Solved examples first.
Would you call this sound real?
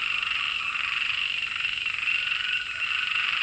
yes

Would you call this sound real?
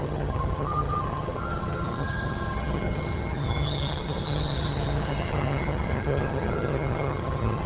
no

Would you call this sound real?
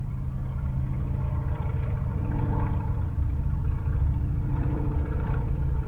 no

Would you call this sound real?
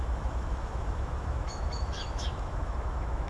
no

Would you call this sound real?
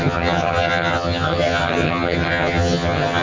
no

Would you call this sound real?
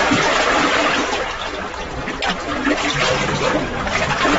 yes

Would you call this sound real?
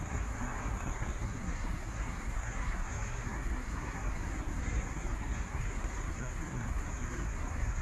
no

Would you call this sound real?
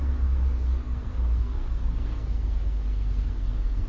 no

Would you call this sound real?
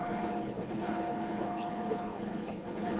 no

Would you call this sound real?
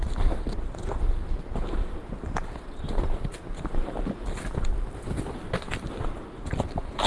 yes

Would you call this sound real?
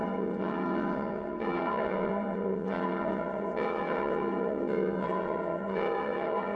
no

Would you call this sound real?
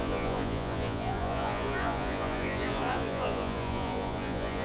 no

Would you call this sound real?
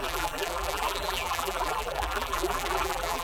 no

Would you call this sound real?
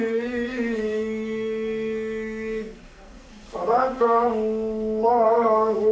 no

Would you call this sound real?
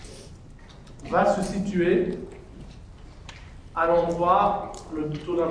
yes